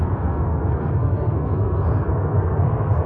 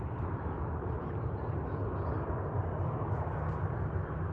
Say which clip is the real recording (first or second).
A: second